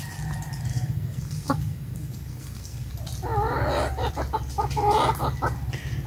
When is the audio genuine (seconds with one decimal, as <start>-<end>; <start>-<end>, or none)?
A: 0.0-0.7; 2.9-6.1